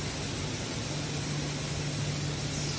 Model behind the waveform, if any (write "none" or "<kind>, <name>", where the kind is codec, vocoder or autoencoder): none